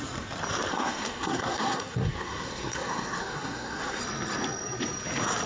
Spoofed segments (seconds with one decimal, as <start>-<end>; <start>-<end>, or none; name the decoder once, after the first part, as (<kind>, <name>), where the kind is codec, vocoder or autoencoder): 0.7-4.0 (codec, SNAC)